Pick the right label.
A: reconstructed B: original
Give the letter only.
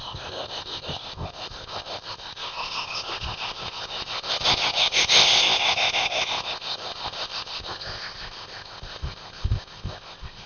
A